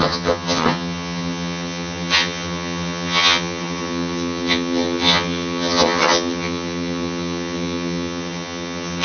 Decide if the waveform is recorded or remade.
remade